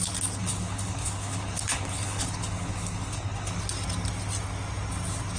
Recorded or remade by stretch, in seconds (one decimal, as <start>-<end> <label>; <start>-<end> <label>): 0.0-0.4 recorded; 0.4-3.6 remade; 3.6-5.4 recorded